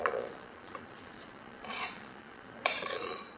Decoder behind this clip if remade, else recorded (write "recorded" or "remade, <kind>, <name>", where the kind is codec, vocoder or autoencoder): remade, vocoder, Vocos